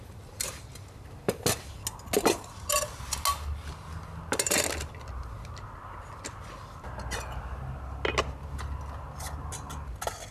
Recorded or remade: recorded